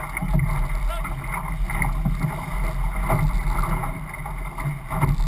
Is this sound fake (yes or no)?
no